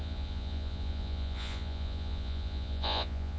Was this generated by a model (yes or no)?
yes